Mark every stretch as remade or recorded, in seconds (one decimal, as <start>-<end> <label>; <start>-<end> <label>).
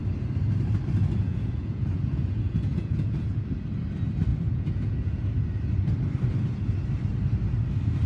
0.0-1.3 recorded; 1.3-3.5 remade; 3.5-4.3 recorded; 4.3-5.3 remade; 5.3-8.1 recorded